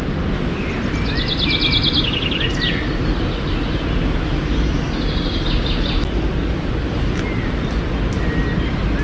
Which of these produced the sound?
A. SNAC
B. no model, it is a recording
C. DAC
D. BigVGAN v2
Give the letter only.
B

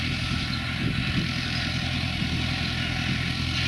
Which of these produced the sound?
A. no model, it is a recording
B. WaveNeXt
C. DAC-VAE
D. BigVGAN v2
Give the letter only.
A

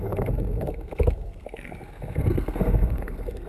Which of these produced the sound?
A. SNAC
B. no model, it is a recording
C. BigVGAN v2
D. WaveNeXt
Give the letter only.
A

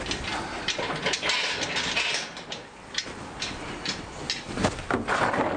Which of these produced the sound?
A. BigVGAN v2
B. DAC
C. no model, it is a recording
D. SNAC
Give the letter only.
C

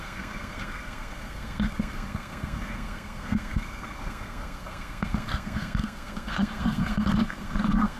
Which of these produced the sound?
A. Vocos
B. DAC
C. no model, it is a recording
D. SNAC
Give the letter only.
D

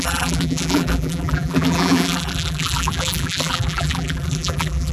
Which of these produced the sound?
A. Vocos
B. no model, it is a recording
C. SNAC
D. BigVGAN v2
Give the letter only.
D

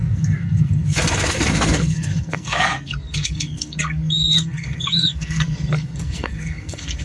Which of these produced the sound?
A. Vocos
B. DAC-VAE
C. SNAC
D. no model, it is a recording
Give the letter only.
C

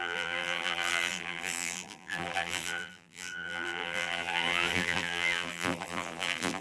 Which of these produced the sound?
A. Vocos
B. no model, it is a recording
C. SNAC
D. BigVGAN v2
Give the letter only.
D